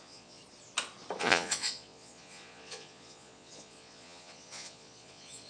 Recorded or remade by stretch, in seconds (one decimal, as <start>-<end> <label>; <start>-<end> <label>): 0.0-0.4 remade; 0.4-1.2 recorded; 1.2-5.5 remade